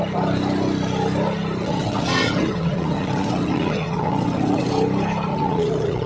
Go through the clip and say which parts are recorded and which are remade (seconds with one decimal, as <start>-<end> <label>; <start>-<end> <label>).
0.0-1.6 recorded; 1.6-4.7 remade; 4.7-5.3 recorded; 5.3-6.1 remade